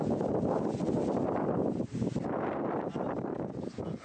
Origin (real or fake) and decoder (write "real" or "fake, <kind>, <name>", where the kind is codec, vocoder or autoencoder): real